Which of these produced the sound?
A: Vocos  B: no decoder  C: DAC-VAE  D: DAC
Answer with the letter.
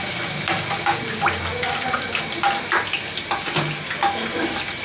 B